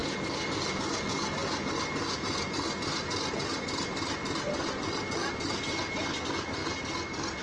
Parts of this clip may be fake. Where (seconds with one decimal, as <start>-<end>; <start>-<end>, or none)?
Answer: none